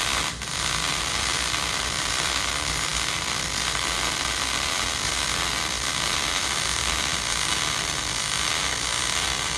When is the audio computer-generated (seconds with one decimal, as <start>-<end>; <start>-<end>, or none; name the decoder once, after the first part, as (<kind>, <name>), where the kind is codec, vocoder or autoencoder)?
0.0-9.6 (vocoder, BigVGAN v2)